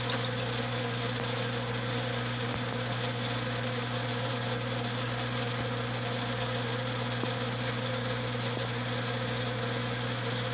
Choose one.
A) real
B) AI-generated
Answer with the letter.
A